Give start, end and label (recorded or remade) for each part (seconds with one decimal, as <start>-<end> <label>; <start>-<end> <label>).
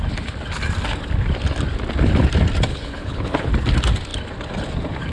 0.0-2.7 recorded; 2.7-3.5 remade; 3.5-5.1 recorded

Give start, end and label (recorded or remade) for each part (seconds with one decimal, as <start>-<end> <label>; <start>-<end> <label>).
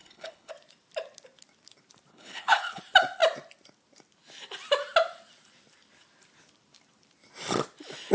0.0-0.5 remade; 0.5-2.1 recorded; 2.1-2.8 remade; 2.8-8.1 recorded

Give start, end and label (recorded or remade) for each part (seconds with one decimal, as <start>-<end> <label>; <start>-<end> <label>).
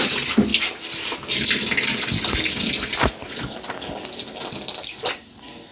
0.0-5.7 recorded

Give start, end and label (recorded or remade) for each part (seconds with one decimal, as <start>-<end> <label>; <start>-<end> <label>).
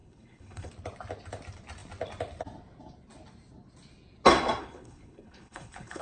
0.0-0.7 remade; 0.7-4.6 recorded; 4.6-6.0 remade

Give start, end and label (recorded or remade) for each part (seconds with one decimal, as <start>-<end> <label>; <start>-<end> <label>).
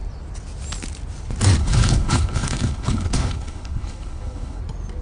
0.0-1.6 recorded; 1.6-4.6 remade; 4.6-5.0 recorded